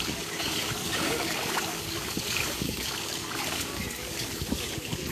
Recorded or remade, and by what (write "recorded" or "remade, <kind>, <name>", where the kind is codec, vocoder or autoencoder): remade, codec, DAC